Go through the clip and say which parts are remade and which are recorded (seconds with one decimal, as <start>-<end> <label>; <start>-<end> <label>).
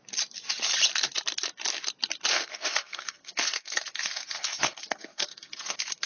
0.0-2.3 recorded; 2.3-6.1 remade